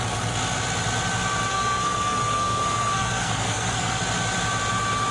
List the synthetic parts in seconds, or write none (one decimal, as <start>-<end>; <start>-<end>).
1.5-4.0